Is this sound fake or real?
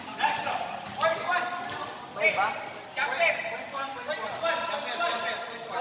real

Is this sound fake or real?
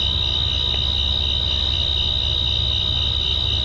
real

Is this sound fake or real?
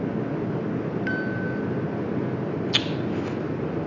real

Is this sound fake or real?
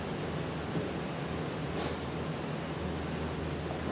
real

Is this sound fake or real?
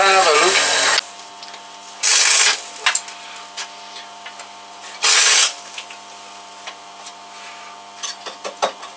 real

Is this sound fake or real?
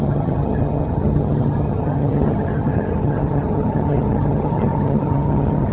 fake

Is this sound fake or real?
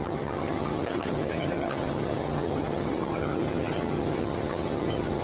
fake